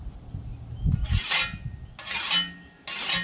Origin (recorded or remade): recorded